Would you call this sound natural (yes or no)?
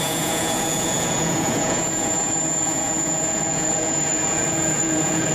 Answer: no